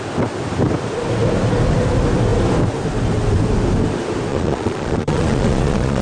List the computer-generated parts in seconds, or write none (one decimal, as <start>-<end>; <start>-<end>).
4.3-6.0